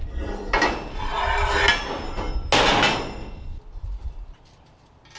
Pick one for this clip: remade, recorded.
recorded